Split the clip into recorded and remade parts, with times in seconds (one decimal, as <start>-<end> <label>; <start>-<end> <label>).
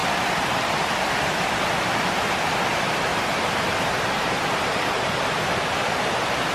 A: 0.0-0.9 remade; 0.9-3.1 recorded; 3.1-5.2 remade; 5.2-6.5 recorded